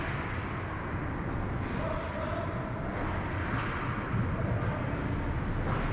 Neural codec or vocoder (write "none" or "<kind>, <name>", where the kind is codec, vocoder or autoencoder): none